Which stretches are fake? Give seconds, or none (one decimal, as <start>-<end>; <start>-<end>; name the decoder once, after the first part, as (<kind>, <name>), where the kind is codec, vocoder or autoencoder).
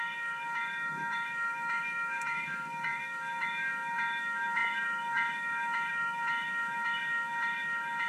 0.0-8.1 (autoencoder, DAC-VAE)